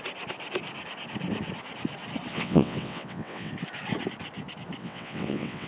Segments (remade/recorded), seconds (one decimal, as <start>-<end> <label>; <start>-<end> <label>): 0.0-2.3 recorded; 2.3-3.5 remade; 3.5-4.8 recorded; 4.8-5.7 remade